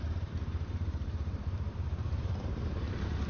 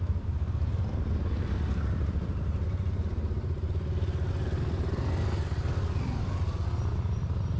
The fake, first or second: first